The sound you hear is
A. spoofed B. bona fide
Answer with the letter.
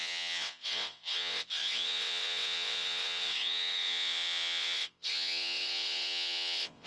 A